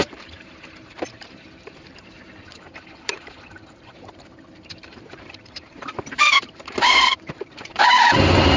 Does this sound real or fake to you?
fake